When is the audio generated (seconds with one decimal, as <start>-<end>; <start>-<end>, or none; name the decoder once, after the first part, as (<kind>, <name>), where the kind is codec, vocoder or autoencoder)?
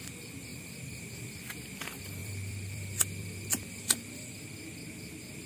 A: 0.5-1.1 (vocoder, BigVGAN v2); 2.2-4.3